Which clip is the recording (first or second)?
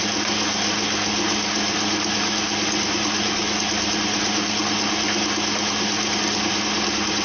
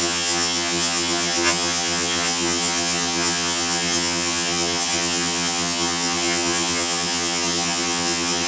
first